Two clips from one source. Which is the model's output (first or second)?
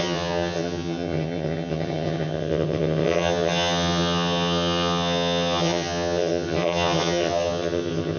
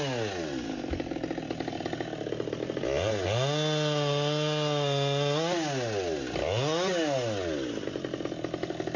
first